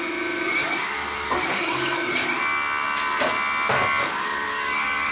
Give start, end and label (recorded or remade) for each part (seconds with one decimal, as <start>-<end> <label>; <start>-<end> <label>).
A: 0.0-0.6 recorded; 0.6-2.1 remade; 2.1-4.0 recorded; 4.0-5.1 remade